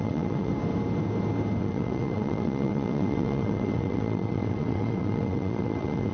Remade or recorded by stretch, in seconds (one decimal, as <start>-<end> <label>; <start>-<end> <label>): 0.0-0.5 remade; 0.5-1.6 recorded; 1.6-6.1 remade